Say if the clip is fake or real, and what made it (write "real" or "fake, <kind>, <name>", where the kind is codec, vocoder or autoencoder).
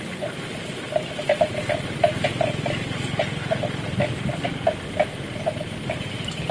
real